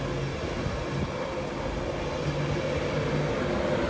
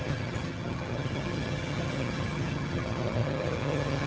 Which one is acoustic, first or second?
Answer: first